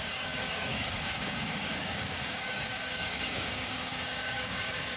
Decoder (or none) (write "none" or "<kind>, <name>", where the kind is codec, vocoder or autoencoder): codec, DAC